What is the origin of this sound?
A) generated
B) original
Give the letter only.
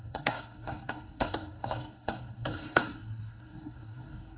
A